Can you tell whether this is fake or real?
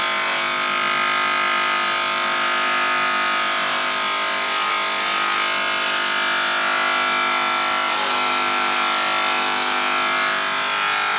real